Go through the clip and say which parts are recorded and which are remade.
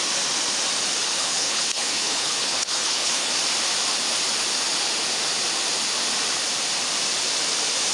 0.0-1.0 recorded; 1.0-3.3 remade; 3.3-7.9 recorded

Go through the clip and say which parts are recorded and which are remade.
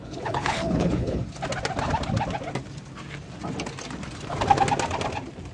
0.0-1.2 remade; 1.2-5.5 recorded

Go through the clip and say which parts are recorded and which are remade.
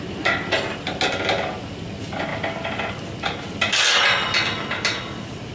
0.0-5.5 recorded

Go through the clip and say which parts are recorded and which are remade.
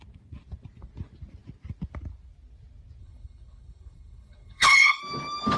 0.0-3.0 recorded; 3.0-5.0 remade; 5.0-5.6 recorded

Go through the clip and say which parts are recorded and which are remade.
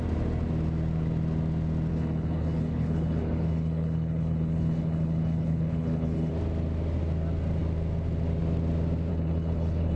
0.0-1.9 recorded; 1.9-6.3 remade; 6.3-9.1 recorded; 9.1-10.0 remade